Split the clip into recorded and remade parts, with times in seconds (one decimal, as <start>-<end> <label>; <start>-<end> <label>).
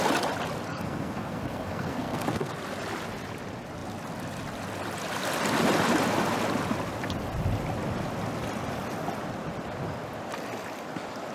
0.0-0.7 recorded; 0.7-2.5 remade; 2.5-11.3 recorded